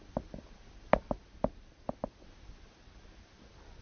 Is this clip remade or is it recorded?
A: recorded